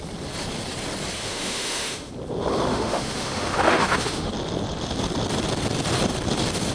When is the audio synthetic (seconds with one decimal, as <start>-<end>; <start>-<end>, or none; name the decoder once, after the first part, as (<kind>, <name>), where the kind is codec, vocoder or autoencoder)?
1.2-2.1 (autoencoder, DAC-VAE); 2.7-4.3